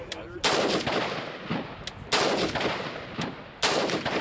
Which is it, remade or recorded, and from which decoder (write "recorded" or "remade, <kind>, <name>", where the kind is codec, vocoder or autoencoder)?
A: recorded